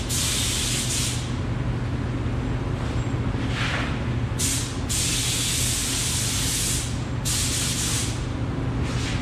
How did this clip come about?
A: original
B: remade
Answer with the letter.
A